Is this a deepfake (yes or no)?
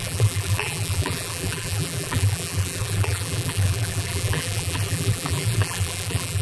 yes